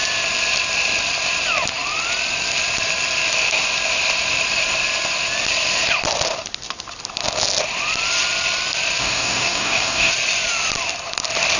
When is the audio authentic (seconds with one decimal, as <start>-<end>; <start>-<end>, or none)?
0.0-9.0; 10.1-11.6